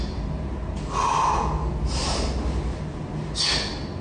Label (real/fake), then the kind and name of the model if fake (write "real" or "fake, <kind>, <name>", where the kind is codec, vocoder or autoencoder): real